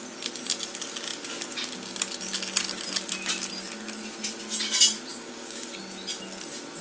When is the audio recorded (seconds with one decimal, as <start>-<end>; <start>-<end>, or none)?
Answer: 0.0-5.1; 5.8-6.8